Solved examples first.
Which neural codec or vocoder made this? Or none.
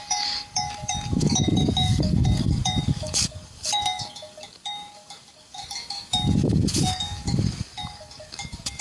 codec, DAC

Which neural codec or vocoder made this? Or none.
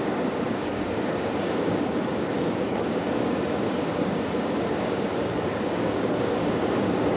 codec, DAC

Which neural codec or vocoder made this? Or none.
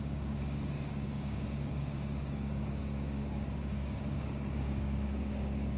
codec, DAC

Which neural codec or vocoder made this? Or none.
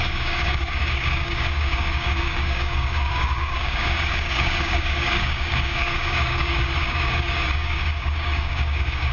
codec, DAC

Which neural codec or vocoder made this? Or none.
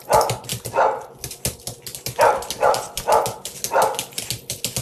none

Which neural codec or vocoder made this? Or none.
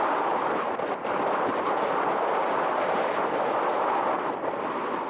none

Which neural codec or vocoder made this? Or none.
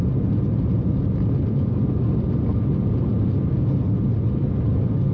none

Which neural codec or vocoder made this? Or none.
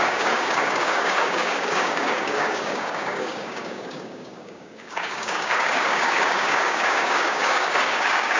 codec, DAC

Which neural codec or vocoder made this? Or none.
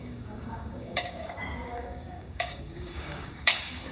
codec, DAC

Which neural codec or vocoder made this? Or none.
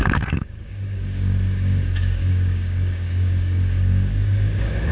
codec, DAC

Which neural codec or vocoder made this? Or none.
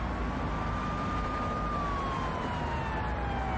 none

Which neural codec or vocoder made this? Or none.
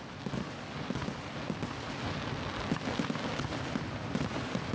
none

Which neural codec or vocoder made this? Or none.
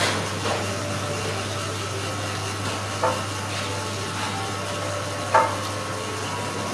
none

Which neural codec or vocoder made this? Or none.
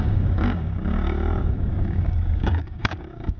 codec, DAC